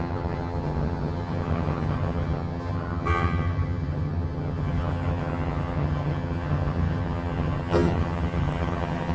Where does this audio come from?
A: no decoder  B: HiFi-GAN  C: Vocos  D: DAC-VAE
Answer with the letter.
B